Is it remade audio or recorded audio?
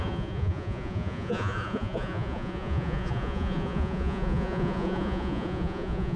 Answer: remade